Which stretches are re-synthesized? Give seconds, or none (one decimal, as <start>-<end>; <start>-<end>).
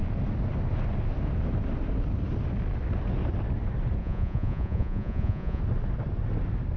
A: 4.0-5.6